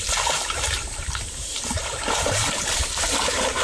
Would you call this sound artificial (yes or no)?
yes